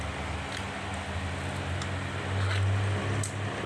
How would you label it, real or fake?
real